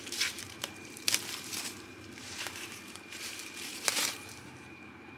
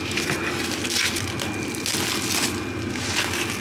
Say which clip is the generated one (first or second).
first